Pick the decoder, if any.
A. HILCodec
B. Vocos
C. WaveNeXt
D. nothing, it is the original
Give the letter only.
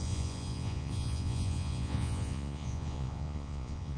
B